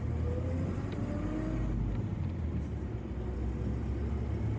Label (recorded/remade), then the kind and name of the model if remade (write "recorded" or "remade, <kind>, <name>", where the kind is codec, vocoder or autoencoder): recorded